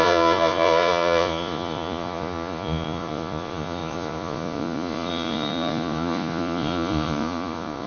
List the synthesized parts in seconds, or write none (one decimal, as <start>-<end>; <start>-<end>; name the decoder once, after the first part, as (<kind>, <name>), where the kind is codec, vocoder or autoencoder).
0.0-7.9 (vocoder, Vocos)